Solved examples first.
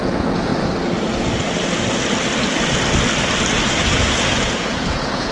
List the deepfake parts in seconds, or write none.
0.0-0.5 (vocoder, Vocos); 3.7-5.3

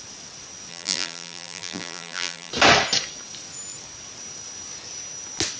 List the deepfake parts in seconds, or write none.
0.7-2.5 (vocoder, BigVGAN v2)

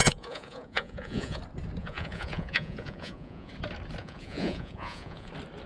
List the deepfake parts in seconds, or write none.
0.0-1.4 (vocoder, Vocos); 1.8-3.5; 4.0-5.3

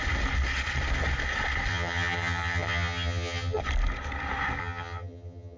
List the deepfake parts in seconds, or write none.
1.7-3.6 (vocoder, HiFi-GAN); 4.6-5.6

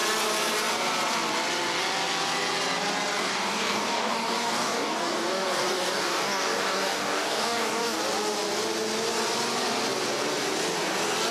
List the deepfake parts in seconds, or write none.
3.2-8.0 (codec, DAC)

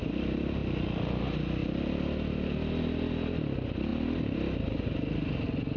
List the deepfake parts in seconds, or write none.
none

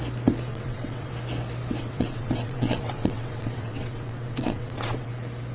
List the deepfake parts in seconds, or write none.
0.5-1.1 (vocoder, WaveNeXt); 1.8-5.1

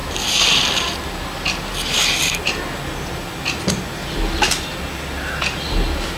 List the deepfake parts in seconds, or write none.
none